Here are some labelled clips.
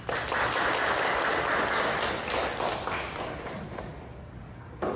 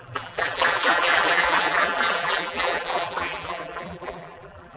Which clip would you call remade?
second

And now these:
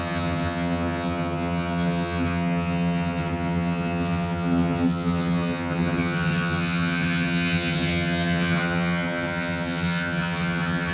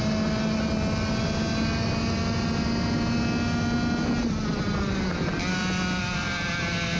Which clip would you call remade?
first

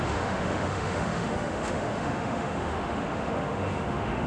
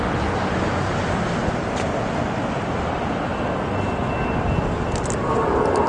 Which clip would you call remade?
first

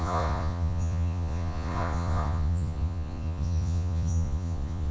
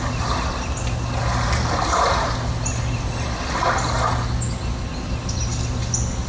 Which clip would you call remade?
first